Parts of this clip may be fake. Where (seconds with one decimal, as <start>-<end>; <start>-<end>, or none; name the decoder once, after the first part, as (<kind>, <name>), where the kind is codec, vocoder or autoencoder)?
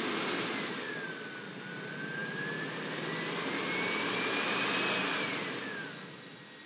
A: none